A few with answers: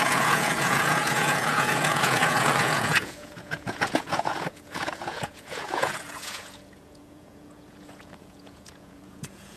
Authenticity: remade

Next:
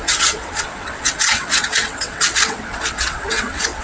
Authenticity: remade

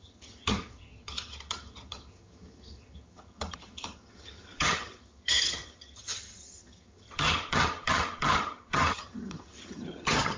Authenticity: remade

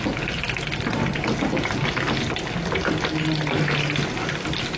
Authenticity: recorded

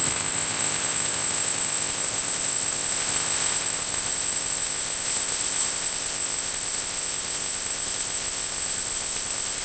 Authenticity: remade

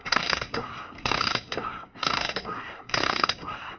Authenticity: remade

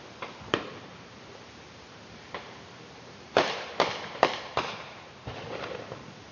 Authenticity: remade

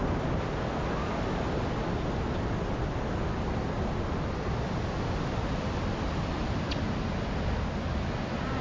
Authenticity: recorded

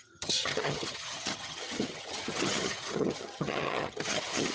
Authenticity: remade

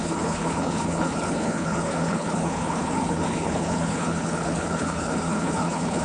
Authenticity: remade